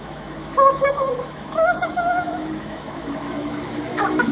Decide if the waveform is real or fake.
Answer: fake